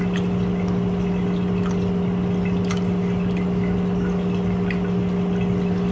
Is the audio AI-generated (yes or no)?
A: no